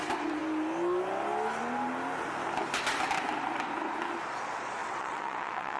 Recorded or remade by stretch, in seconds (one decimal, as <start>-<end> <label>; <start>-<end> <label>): 0.0-4.8 recorded; 4.8-5.8 remade